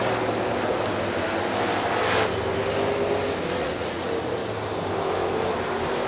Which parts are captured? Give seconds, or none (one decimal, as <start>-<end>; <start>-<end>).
0.0-3.6; 4.1-6.1